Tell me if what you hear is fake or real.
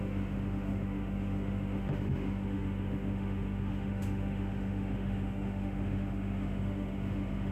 fake